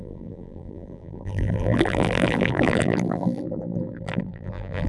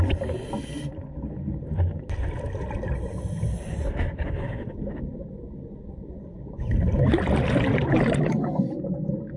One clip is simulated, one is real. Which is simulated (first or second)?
first